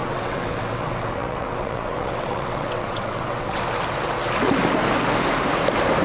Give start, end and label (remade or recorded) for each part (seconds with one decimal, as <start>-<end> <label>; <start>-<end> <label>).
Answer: 0.0-3.6 remade; 3.6-6.0 recorded